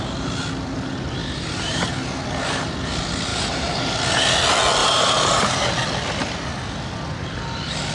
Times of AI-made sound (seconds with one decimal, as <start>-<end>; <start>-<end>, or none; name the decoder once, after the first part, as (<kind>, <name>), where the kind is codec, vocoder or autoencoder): 1.2-1.9 (vocoder, BigVGAN v2); 3.3-4.0; 4.8-5.6

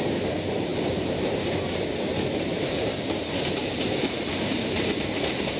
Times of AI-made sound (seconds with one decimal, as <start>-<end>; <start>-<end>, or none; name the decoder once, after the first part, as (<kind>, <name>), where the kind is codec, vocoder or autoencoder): 0.0-5.6 (vocoder, BigVGAN v2)

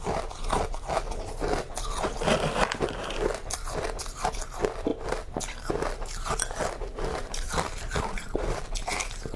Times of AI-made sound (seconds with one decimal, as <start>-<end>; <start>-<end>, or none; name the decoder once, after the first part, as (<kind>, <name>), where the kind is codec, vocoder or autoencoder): 7.2-8.6 (vocoder, BigVGAN v2)